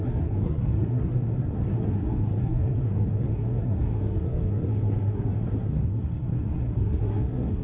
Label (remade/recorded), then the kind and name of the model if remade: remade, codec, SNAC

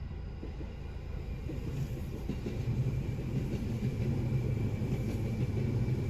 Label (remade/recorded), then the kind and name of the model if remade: recorded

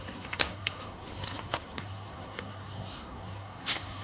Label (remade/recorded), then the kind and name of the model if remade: remade, codec, SNAC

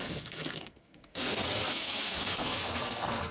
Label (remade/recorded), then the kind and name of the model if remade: remade, codec, SNAC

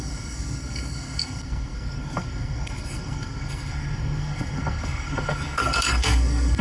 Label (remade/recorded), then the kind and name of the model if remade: remade, codec, SNAC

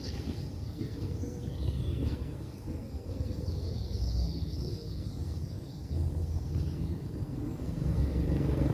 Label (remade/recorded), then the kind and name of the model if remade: remade, codec, SNAC